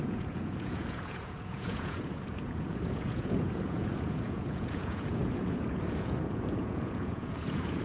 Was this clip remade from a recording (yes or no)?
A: yes